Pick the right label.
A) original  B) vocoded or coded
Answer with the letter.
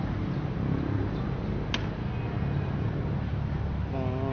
A